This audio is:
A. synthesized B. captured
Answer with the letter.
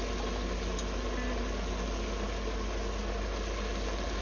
B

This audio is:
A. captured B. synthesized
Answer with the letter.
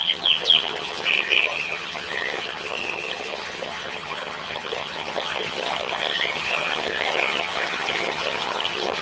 B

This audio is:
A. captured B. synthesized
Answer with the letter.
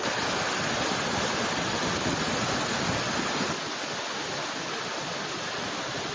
A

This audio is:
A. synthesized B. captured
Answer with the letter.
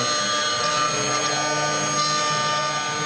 B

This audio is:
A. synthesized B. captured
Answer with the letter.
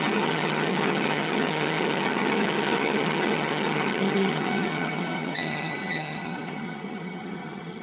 A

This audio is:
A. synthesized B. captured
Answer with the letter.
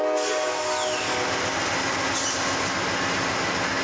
B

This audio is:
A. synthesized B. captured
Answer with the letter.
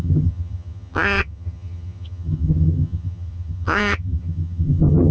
A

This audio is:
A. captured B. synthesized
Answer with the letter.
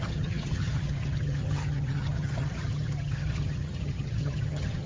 B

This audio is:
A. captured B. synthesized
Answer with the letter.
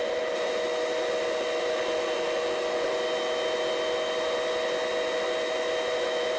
A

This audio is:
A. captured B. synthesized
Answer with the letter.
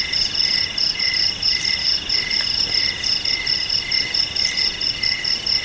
A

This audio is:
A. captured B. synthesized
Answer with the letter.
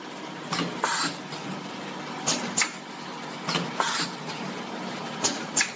A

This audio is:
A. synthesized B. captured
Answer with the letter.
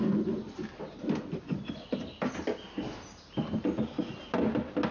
B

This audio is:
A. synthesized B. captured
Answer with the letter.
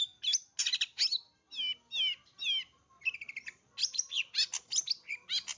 B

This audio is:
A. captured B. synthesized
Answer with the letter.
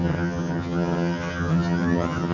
B